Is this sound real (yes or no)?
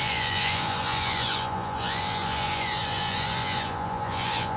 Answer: no